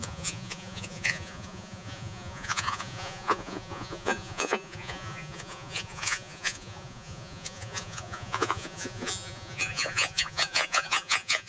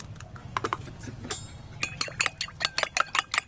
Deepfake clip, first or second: first